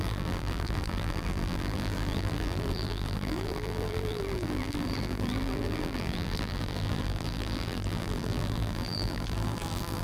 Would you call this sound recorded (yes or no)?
no